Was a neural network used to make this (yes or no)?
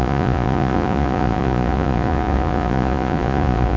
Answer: yes